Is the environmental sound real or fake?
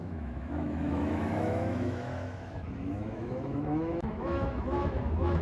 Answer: fake